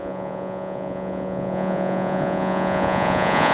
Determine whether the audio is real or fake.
fake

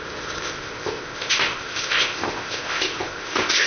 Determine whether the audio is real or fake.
fake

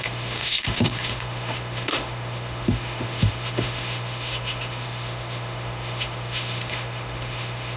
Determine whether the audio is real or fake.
fake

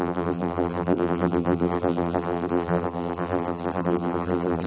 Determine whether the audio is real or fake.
fake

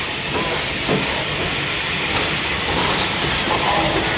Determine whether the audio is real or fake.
real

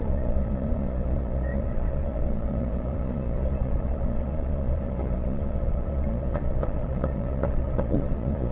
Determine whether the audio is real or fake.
fake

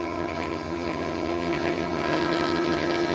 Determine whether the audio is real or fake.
fake